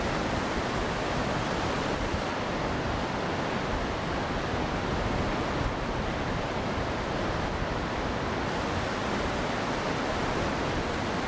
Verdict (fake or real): real